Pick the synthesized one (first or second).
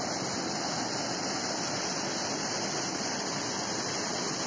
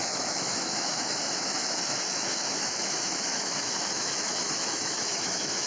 second